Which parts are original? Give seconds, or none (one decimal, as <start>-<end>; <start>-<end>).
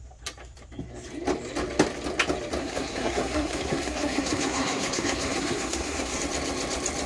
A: 0.0-2.6; 6.2-7.1